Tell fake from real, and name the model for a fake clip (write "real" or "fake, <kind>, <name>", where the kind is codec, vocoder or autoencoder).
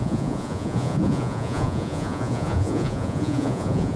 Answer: fake, vocoder, Vocos